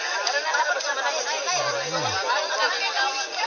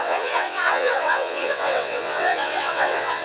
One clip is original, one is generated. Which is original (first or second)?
first